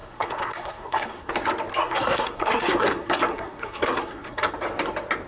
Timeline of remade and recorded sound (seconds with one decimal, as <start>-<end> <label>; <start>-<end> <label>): 0.0-1.3 remade; 1.3-1.8 recorded; 1.8-4.5 remade; 4.5-5.3 recorded